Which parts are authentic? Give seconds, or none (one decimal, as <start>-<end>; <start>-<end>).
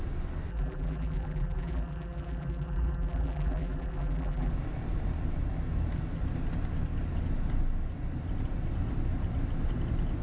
0.0-0.5; 4.5-10.2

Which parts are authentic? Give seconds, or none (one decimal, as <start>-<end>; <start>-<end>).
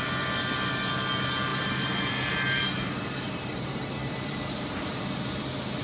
0.0-1.5; 5.0-5.8